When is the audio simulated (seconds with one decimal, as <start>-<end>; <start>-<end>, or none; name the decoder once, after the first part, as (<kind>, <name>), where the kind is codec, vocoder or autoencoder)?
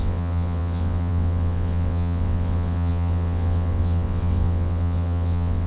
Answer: 0.0-5.7 (vocoder, WaveNeXt)